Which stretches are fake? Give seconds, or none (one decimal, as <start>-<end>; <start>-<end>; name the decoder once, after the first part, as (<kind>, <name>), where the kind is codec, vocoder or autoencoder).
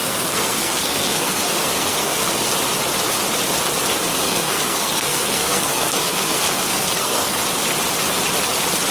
0.0-2.5 (codec, SNAC); 4.1-7.4